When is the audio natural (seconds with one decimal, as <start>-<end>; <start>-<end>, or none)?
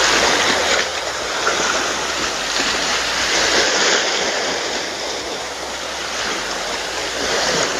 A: 0.0-7.8